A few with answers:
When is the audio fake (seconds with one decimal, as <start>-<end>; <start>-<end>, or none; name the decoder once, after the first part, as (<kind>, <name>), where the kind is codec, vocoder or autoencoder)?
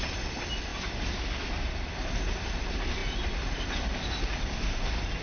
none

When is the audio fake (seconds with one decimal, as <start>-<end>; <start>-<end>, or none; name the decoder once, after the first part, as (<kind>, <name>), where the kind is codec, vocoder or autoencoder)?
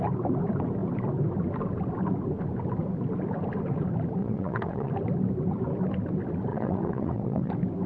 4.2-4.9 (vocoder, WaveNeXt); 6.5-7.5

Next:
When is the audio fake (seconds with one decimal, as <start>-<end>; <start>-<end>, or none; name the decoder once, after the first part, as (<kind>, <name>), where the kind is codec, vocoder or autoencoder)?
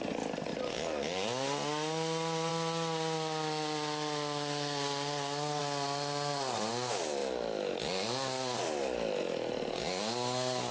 none